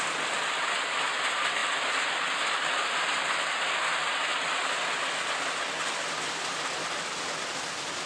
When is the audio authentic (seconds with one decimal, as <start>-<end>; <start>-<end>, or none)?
0.0-8.1